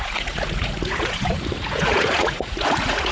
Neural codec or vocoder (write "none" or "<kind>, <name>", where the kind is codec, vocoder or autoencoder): vocoder, Vocos